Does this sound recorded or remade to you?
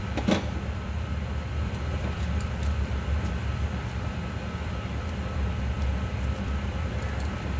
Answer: remade